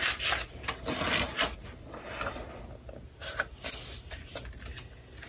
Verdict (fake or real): real